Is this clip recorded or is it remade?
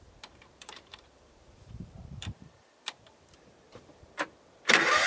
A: remade